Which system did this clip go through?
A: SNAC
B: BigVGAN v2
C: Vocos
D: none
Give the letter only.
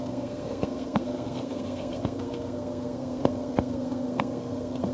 A